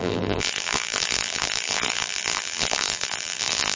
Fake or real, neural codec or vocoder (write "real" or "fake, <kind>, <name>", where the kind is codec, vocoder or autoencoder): fake, vocoder, BigVGAN v2